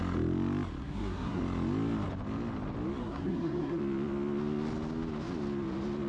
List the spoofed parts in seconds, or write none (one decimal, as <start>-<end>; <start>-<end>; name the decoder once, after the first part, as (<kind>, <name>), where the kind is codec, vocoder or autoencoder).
0.8-1.4 (codec, SNAC); 3.0-3.8